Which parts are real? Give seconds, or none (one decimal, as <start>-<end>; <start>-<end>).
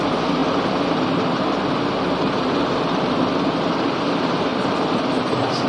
0.0-5.7